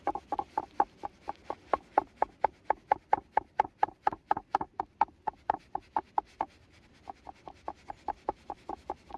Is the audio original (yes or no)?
yes